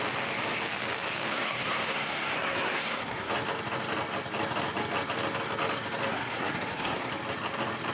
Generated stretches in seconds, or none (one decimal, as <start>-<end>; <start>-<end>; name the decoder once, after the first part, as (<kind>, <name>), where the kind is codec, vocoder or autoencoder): 1.3-3.3 (codec, SNAC); 6.1-7.1